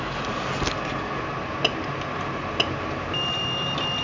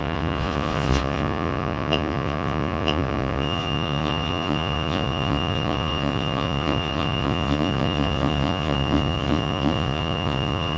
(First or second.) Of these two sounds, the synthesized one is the second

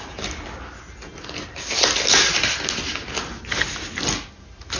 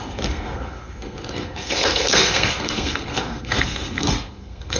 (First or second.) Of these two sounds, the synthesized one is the second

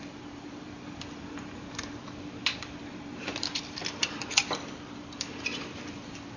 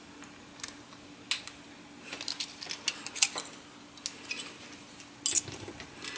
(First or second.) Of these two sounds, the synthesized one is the first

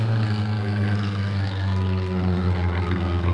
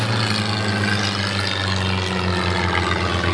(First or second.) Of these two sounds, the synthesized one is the first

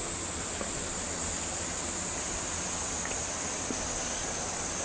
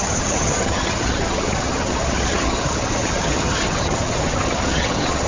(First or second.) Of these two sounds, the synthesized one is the second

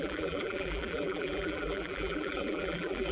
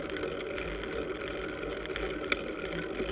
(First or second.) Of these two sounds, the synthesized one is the first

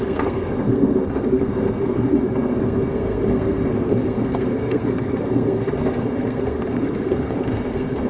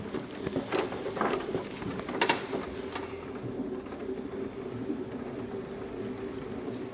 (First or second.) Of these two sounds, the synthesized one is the first